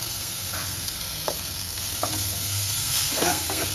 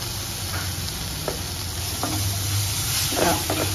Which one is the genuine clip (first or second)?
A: second